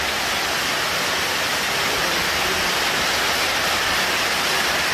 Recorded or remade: recorded